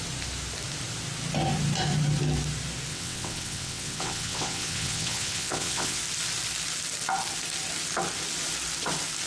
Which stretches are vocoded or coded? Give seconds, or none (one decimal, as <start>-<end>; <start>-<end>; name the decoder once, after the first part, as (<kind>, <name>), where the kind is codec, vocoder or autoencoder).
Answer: 2.9-6.0 (vocoder, WaveNeXt)